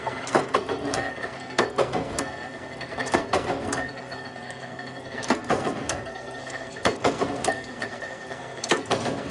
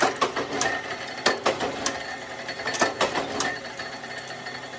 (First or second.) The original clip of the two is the second